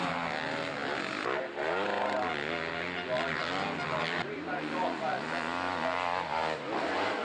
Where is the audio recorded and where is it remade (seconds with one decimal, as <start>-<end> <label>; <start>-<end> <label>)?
0.0-7.2 recorded